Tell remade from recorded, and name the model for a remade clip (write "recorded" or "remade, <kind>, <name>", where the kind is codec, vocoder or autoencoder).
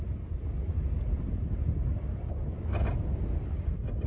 recorded